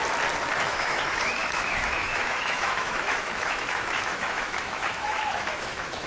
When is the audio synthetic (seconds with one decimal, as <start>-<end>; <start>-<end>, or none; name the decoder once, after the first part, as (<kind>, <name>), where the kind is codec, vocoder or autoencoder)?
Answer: 0.6-6.1 (autoencoder, DAC-VAE)